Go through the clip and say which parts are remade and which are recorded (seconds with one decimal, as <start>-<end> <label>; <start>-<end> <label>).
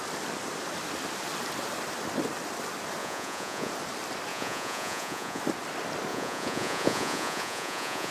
0.0-3.0 recorded; 3.0-3.7 remade; 3.7-4.3 recorded; 4.3-5.4 remade; 5.4-6.1 recorded; 6.1-8.1 remade